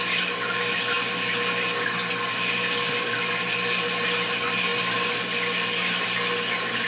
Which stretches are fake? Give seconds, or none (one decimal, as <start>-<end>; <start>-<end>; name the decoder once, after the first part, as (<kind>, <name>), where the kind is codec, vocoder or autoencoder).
none